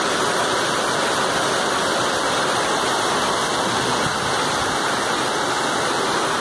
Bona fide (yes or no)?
yes